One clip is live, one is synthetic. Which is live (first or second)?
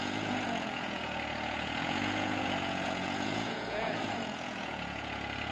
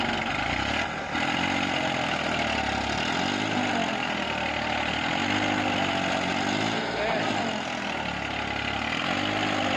second